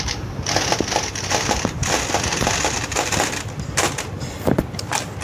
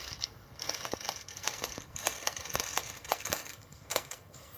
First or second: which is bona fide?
first